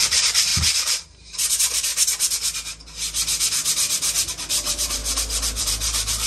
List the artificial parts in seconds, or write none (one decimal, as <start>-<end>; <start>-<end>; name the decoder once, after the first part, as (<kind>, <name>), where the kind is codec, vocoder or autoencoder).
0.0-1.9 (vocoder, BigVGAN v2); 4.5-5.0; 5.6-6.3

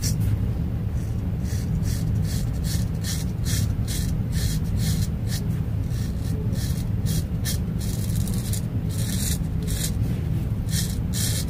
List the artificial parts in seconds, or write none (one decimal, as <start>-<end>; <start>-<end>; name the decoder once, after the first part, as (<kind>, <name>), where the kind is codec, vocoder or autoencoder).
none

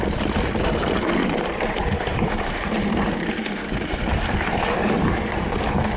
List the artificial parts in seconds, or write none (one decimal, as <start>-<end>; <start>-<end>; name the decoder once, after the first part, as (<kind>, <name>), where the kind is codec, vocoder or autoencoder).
0.0-6.0 (vocoder, BigVGAN v2)